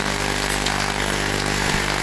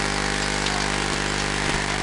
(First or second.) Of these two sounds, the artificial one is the first